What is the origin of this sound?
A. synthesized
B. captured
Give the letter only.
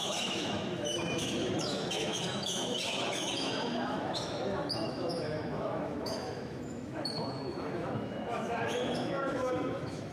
A